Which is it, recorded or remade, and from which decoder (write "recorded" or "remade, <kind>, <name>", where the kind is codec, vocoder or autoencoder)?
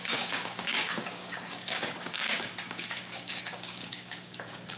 remade, codec, DAC